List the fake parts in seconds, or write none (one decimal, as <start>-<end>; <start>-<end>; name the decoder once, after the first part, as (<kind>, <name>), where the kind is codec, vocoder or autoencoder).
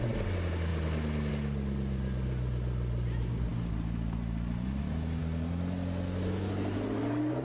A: none